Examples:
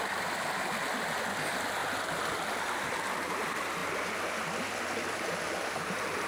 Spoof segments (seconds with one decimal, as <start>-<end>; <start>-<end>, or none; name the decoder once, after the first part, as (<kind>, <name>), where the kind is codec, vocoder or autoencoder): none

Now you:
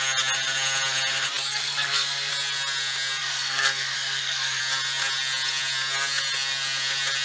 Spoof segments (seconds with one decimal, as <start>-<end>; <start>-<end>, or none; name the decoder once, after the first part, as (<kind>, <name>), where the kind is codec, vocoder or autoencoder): 1.5-2.3 (codec, SNAC); 3.2-4.6

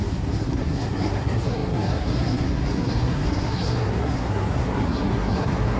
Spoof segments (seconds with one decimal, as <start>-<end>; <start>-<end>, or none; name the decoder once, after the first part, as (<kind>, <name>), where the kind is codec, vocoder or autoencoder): 0.0-5.8 (codec, SNAC)